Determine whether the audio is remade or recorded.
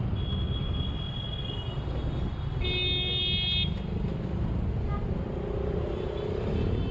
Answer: recorded